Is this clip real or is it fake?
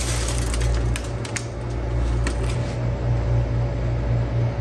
real